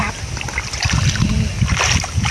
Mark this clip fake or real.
real